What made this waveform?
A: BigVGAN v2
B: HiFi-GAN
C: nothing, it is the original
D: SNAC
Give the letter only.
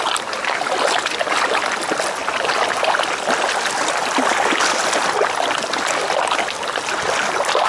C